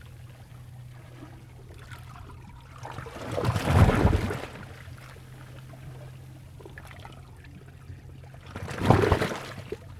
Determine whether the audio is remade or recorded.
recorded